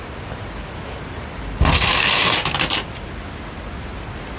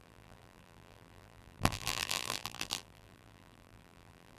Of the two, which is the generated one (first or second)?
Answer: second